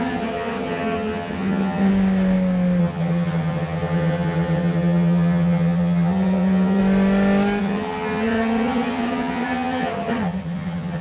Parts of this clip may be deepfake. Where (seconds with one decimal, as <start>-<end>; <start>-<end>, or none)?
0.0-1.9; 2.8-6.8; 7.6-11.0